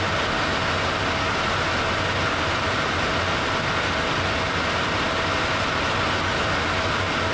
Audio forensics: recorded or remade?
recorded